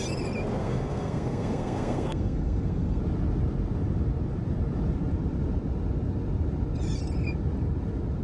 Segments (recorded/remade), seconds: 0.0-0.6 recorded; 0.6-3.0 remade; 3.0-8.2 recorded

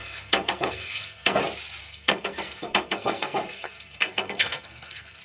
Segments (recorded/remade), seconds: 0.0-1.4 remade; 1.4-1.8 recorded; 1.8-5.2 remade

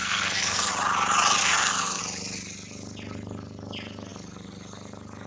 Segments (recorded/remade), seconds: 0.0-0.7 remade; 0.7-1.4 recorded; 1.4-2.0 remade; 2.0-5.3 recorded

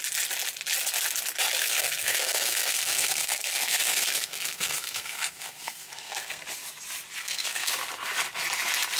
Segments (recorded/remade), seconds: 0.0-1.6 recorded; 1.6-6.4 remade; 6.4-7.2 recorded; 7.2-7.7 remade; 7.7-9.0 recorded

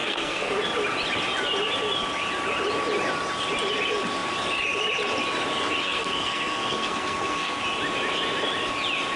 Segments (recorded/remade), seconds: 0.0-0.5 remade; 0.5-5.8 recorded; 5.8-7.6 remade; 7.6-9.2 recorded